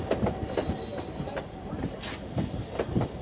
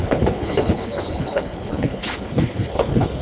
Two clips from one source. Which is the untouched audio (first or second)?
first